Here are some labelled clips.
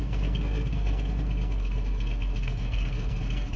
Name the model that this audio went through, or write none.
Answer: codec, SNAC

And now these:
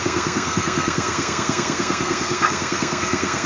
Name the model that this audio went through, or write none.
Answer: codec, SNAC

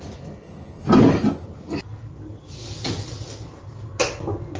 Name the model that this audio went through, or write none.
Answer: none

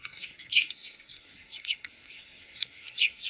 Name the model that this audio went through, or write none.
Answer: codec, SNAC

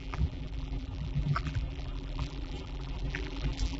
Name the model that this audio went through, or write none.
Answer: vocoder, BigVGAN v2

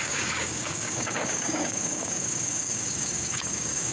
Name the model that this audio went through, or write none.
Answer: codec, DAC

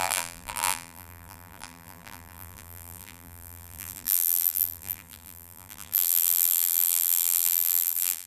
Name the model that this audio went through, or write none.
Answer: vocoder, BigVGAN v2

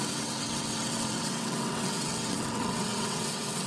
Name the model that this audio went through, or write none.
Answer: vocoder, WaveNeXt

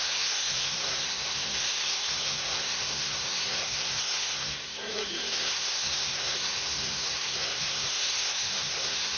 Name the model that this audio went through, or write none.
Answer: codec, SNAC